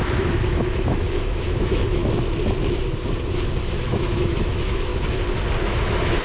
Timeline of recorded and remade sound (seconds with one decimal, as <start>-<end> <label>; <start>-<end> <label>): 0.0-2.0 remade; 2.0-3.6 recorded; 3.6-4.9 remade; 4.9-5.6 recorded; 5.6-6.2 remade